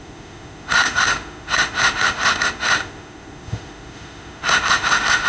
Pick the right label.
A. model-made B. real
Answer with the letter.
A